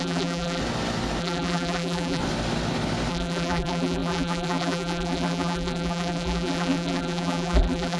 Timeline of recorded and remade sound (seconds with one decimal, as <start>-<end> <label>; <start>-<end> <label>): 0.0-0.6 remade; 0.6-1.2 recorded; 1.2-2.2 remade; 2.2-3.1 recorded; 3.1-8.0 remade